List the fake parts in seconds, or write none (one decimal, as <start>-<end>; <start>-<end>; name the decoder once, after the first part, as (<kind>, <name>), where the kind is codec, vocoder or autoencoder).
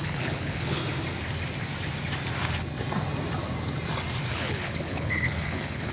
0.0-0.8 (codec, HILCodec); 4.3-5.9